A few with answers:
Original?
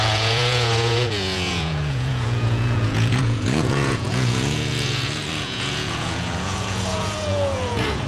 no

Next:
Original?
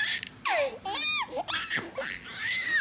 yes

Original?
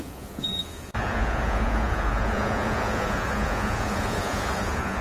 no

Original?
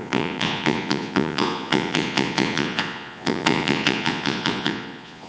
no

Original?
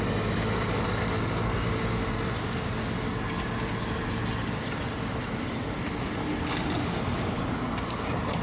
yes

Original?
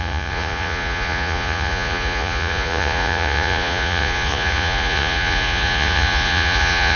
no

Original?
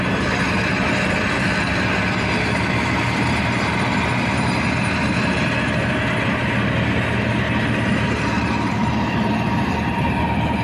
yes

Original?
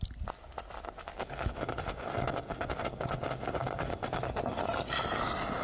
yes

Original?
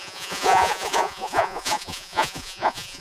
no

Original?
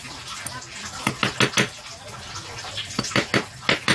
yes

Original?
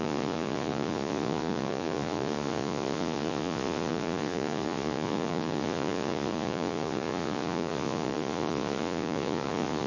no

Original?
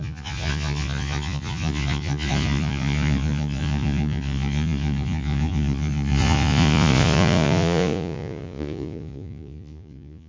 no